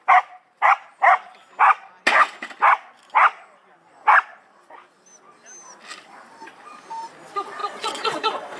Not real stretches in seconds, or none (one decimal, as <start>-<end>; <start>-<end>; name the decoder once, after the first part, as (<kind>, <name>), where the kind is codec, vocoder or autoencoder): 7.6-8.6 (vocoder, WaveNeXt)